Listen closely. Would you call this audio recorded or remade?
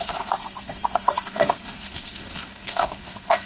remade